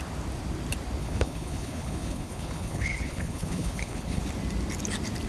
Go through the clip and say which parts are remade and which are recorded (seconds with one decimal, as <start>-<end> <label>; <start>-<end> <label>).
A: 0.0-1.0 recorded; 1.0-4.2 remade; 4.2-5.3 recorded